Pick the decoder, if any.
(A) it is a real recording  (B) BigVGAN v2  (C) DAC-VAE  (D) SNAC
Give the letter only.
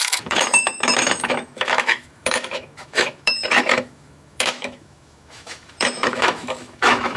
C